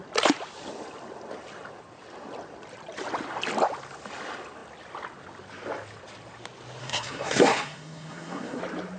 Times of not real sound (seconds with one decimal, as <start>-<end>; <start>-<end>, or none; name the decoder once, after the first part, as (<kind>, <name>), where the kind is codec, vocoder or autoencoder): 6.8-8.6 (codec, SNAC)